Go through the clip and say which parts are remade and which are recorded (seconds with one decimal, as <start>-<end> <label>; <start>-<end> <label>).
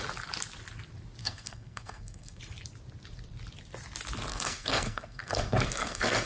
0.0-1.2 recorded; 1.2-2.4 remade; 2.4-4.3 recorded; 4.3-6.3 remade